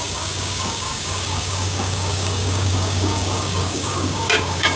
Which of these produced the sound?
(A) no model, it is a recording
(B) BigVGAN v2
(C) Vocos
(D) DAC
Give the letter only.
D